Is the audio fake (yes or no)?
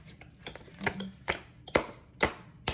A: no